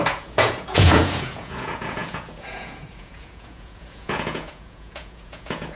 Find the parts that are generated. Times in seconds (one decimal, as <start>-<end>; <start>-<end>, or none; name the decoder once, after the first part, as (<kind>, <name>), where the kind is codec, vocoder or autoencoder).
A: 0.0-5.8 (vocoder, Vocos)